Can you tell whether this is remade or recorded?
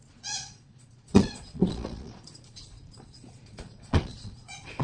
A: remade